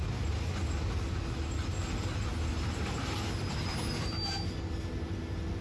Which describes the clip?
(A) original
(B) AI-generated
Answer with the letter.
A